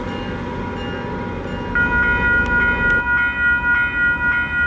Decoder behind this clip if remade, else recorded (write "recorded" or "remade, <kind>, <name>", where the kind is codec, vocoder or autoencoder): recorded